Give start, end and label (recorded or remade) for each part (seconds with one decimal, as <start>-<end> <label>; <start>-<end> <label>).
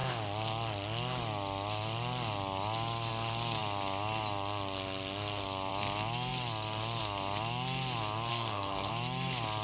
0.0-8.3 recorded; 8.3-8.9 remade; 8.9-9.6 recorded